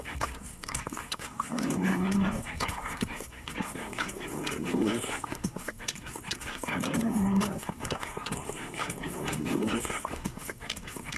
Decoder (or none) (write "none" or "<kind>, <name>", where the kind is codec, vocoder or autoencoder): codec, SNAC